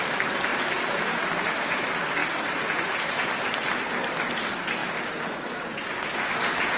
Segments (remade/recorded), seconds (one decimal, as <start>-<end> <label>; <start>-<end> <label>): 0.0-6.8 recorded